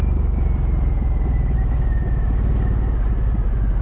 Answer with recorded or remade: recorded